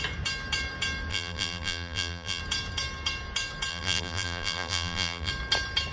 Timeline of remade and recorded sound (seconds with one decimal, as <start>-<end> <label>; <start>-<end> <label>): 0.0-1.1 recorded; 1.1-2.4 remade; 2.4-3.7 recorded; 3.7-5.3 remade; 5.3-5.9 recorded